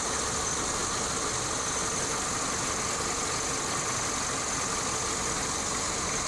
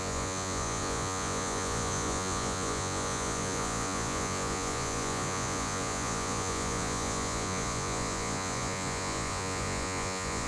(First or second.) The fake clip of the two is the second